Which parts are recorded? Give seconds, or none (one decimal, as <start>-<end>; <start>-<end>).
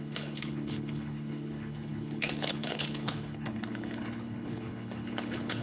none